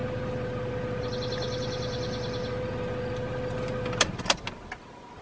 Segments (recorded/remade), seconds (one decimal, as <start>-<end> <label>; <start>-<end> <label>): 0.0-5.2 recorded